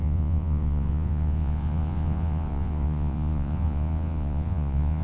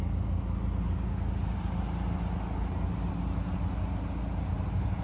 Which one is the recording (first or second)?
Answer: second